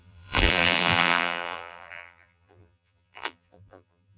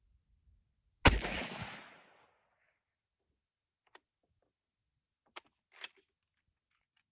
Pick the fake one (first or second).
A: first